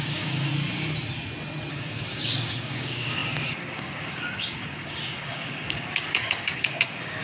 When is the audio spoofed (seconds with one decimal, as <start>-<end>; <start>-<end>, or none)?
0.0-0.5; 1.7-7.2